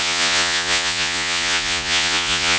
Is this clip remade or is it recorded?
remade